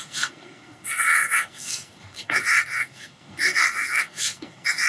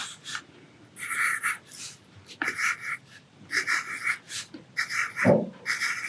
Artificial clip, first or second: first